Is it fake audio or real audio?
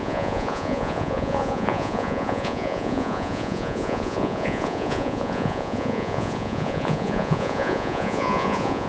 fake